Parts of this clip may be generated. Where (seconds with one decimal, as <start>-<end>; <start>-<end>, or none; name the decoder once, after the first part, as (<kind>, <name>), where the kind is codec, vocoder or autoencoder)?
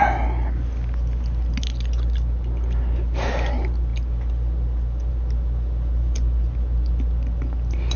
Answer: none